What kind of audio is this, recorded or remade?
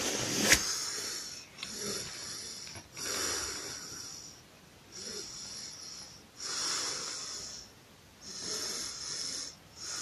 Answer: recorded